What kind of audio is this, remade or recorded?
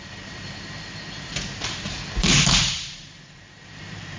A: remade